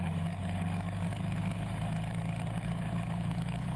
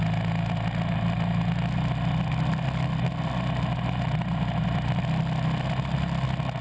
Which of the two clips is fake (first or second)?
first